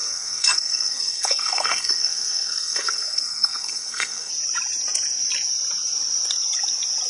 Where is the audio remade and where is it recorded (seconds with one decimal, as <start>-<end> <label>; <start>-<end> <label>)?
0.0-4.3 remade; 4.3-7.1 recorded